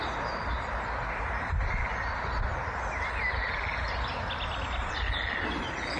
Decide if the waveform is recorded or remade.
recorded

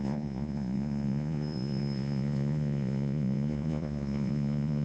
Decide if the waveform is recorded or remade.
remade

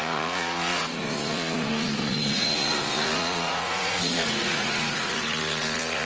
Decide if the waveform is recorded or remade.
remade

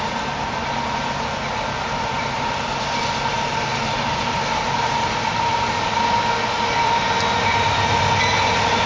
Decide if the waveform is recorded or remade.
recorded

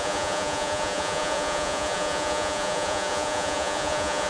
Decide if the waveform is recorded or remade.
remade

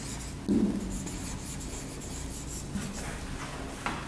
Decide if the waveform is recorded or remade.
recorded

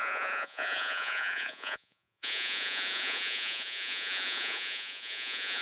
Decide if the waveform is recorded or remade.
remade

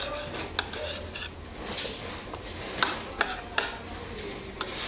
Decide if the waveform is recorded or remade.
recorded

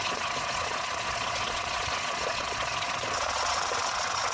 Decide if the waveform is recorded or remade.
remade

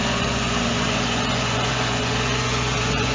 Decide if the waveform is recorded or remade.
remade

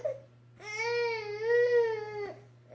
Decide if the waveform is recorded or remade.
recorded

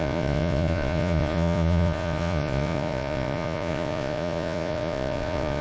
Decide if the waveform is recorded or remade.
remade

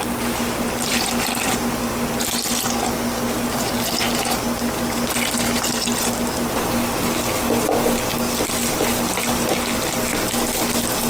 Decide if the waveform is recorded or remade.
recorded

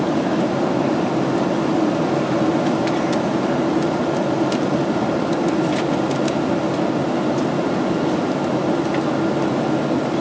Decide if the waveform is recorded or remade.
recorded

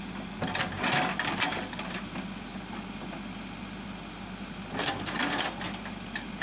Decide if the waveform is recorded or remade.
recorded